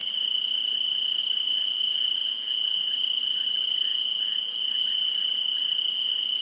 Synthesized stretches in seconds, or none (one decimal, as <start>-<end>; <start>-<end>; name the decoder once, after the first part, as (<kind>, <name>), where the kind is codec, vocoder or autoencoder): 2.2-2.8 (vocoder, Vocos); 3.9-4.6